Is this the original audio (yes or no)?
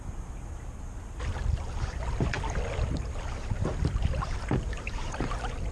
yes